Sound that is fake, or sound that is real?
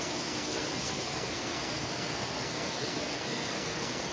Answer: fake